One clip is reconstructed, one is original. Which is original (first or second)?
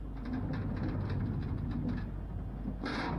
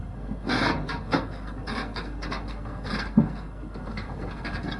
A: first